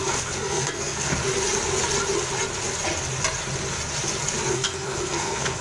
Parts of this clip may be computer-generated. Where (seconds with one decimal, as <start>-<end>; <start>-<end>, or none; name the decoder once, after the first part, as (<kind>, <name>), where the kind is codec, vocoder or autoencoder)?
0.0-1.1 (codec, SNAC); 4.5-5.6